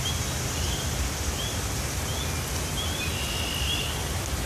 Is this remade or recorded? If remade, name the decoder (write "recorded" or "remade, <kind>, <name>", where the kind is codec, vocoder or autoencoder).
recorded